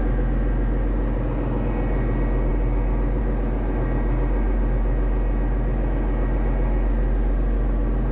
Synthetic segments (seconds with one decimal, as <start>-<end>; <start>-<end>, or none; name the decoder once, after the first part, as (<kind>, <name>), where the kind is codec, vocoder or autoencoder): none